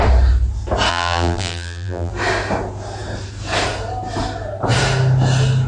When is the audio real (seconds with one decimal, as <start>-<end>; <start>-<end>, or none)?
0.0-0.9; 2.1-5.7